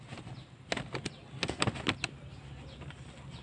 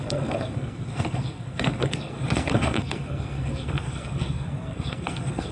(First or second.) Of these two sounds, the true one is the first